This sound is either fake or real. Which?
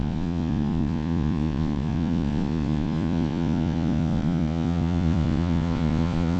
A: fake